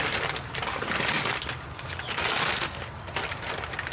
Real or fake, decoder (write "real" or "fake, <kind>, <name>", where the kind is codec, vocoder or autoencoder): real